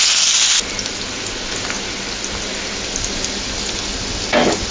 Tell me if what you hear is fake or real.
real